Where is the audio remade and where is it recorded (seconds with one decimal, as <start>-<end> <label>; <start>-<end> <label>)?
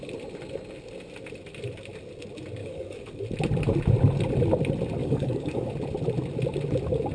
0.0-2.6 recorded; 2.6-3.2 remade; 3.2-5.0 recorded; 5.0-5.7 remade; 5.7-7.1 recorded